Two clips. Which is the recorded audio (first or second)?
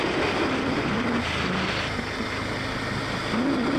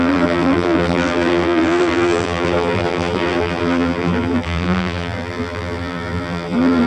first